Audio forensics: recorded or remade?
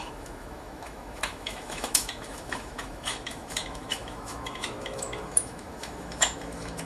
remade